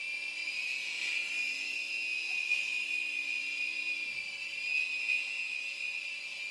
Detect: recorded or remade recorded